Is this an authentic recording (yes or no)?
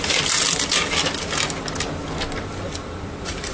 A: yes